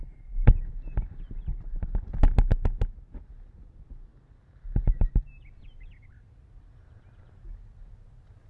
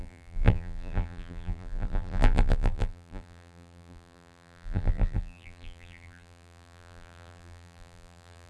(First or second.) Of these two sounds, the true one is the first